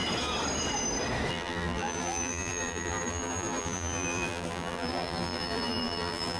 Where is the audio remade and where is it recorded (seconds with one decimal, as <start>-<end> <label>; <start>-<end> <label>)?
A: 0.0-1.3 recorded; 1.3-6.4 remade